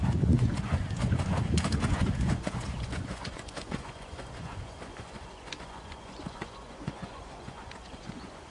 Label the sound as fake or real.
fake